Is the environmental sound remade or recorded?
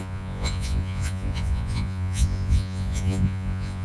remade